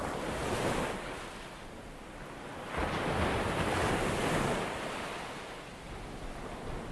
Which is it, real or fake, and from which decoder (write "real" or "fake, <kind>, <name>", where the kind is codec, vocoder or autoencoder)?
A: real